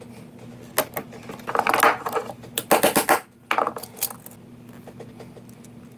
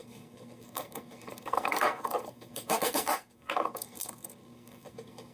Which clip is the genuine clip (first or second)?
first